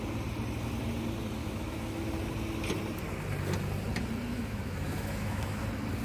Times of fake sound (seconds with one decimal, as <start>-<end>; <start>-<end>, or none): 1.4-2.0; 4.3-5.6